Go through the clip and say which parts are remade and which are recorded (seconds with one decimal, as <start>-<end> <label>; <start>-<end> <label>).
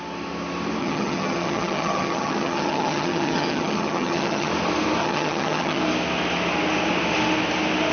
0.0-0.8 recorded; 0.8-4.5 remade; 4.5-5.0 recorded; 5.0-5.8 remade; 5.8-7.9 recorded